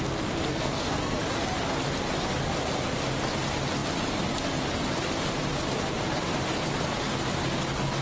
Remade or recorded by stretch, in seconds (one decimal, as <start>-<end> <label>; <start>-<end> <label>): 0.0-0.5 recorded; 0.5-1.2 remade; 1.2-8.0 recorded